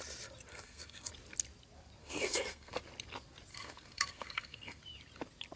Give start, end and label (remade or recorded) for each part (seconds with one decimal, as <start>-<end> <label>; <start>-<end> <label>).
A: 0.0-0.5 recorded; 0.5-1.1 remade; 1.1-2.0 recorded; 2.0-2.8 remade; 2.8-3.5 recorded; 3.5-4.8 remade; 4.8-5.6 recorded